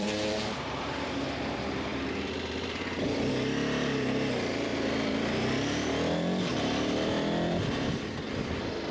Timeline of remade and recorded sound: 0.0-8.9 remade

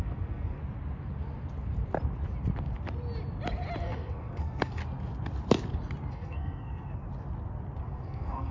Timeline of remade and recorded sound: 0.0-0.6 remade; 0.6-3.8 recorded; 3.8-4.8 remade; 4.8-6.1 recorded; 6.1-7.0 remade; 7.0-7.8 recorded; 7.8-8.5 remade